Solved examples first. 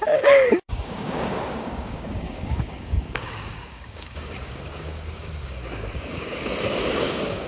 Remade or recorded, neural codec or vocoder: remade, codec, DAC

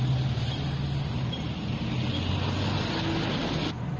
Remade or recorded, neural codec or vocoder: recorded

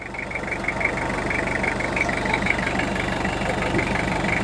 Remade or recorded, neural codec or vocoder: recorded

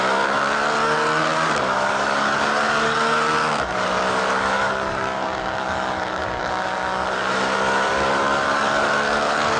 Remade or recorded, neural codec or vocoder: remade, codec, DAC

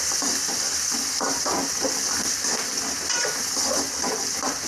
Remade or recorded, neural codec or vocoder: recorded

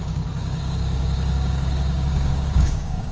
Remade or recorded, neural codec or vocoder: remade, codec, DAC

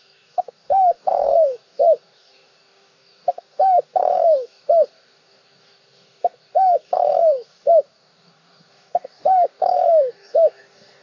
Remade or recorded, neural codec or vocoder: remade, codec, DAC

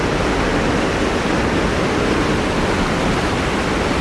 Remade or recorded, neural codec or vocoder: recorded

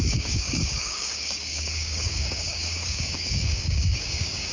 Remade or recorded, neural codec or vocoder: remade, codec, DAC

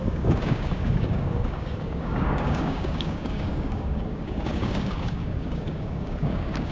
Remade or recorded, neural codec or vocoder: remade, codec, DAC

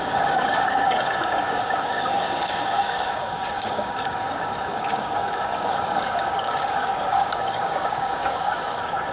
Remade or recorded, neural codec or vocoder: remade, codec, DAC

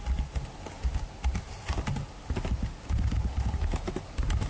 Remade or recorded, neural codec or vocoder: recorded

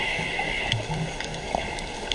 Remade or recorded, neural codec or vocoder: remade, codec, DAC